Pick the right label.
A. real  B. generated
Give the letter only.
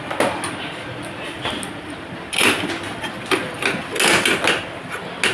A